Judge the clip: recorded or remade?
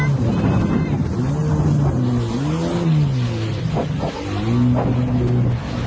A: recorded